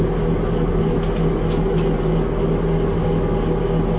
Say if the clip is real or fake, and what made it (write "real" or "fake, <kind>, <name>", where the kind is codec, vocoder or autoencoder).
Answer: real